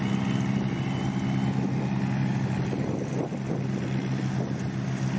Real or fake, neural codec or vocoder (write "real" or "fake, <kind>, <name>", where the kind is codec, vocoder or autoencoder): real